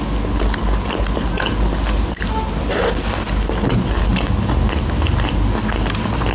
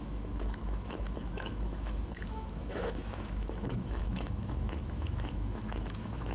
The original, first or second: first